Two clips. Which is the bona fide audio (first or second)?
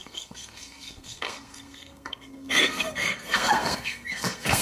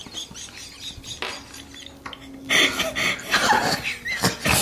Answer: second